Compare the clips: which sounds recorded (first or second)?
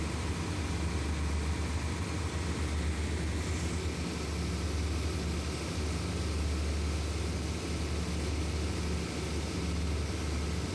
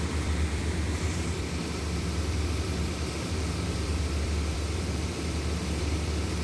first